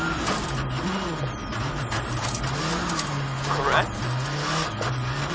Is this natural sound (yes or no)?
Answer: yes